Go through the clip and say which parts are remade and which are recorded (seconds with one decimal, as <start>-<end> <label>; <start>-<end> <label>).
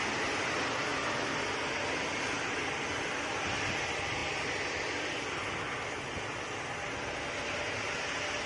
0.0-8.5 recorded